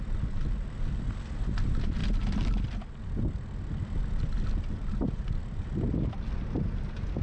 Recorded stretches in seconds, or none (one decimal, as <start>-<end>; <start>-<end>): 0.0-7.2